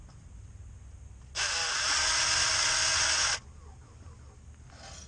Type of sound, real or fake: real